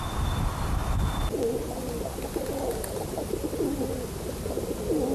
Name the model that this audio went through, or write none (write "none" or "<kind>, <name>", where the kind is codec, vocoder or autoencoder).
none